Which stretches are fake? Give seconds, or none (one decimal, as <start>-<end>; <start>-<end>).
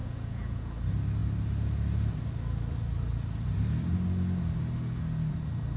0.0-0.7